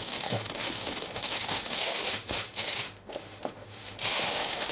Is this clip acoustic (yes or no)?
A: no